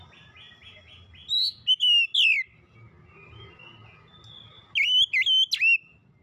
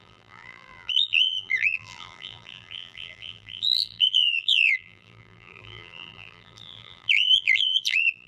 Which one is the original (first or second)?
first